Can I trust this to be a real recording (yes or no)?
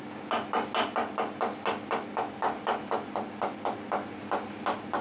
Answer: yes